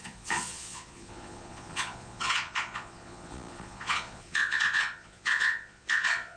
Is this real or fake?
fake